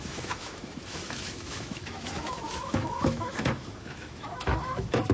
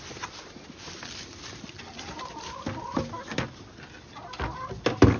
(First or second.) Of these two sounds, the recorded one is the second